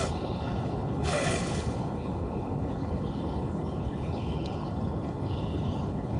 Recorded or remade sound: remade